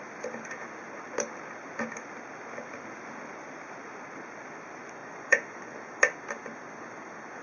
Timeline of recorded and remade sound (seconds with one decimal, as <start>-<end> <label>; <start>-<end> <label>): 0.0-5.0 recorded; 5.0-5.9 remade; 5.9-7.4 recorded